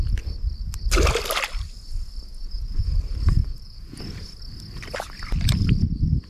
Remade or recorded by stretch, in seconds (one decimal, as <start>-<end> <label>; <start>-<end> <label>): 0.0-2.3 recorded; 2.3-2.9 remade; 2.9-3.4 recorded; 3.4-4.0 remade; 4.0-6.3 recorded